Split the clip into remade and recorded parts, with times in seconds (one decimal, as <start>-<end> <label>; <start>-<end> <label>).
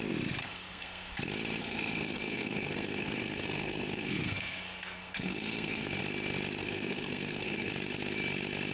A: 0.0-0.4 recorded; 0.4-1.2 remade; 1.2-1.6 recorded; 1.6-6.0 remade; 6.0-6.6 recorded; 6.6-7.7 remade; 7.7-8.7 recorded